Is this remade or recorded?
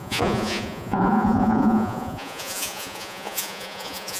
remade